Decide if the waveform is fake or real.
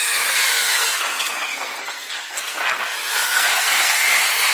fake